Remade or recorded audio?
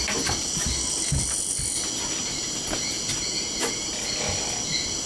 recorded